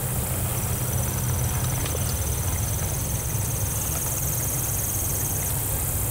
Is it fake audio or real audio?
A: real